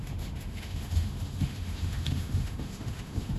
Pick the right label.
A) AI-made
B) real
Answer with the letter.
A